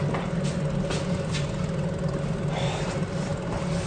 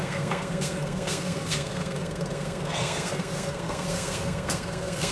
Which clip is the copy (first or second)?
second